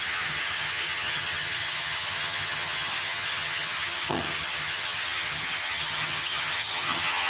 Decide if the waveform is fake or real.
fake